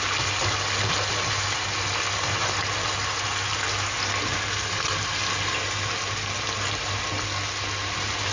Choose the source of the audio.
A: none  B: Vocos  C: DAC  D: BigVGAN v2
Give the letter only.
A